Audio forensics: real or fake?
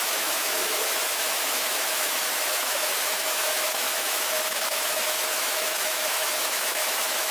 fake